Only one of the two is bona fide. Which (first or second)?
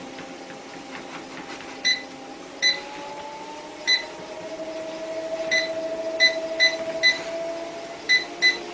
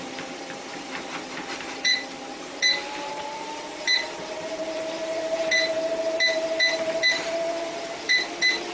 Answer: first